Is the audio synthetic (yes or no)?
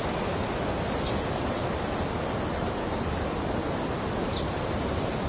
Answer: no